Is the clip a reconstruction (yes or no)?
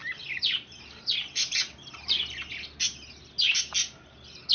no